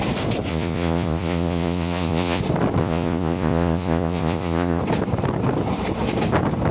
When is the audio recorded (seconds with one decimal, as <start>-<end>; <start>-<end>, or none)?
0.0-0.5; 2.4-2.8; 4.8-6.7